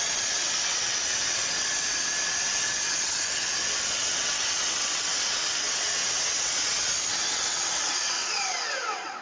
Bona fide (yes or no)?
no